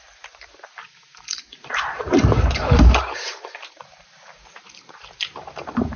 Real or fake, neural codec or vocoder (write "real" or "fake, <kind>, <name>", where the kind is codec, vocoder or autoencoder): fake, vocoder, BigVGAN v2